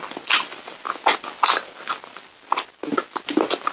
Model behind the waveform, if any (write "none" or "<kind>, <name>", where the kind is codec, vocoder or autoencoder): none